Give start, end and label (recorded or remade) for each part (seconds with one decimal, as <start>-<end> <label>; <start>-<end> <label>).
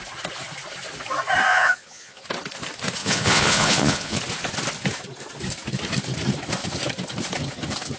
0.0-1.5 recorded; 1.5-2.2 remade; 2.2-3.0 recorded; 3.0-4.2 remade; 4.2-8.0 recorded